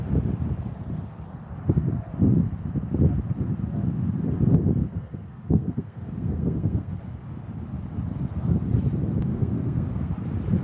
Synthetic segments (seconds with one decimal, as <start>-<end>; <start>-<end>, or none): 4.8-6.9; 9.3-10.1